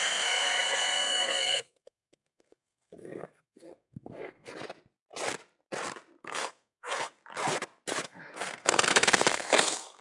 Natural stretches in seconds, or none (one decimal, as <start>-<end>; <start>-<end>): 4.5-6.2; 7.2-8.0